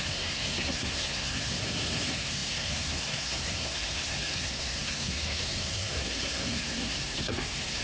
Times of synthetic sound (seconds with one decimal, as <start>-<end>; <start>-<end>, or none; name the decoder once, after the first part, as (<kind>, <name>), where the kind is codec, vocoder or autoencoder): 0.0-7.8 (codec, SNAC)